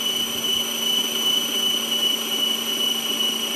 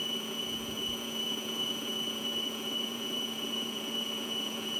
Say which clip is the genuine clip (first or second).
first